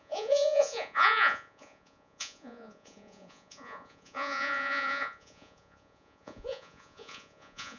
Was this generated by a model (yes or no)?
yes